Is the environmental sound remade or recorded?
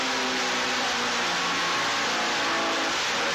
recorded